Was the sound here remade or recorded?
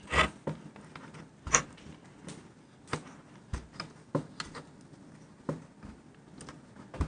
recorded